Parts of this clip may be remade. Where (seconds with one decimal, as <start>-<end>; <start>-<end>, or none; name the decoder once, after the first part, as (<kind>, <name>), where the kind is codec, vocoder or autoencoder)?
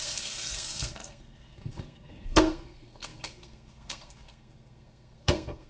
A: 0.0-5.7 (codec, SNAC)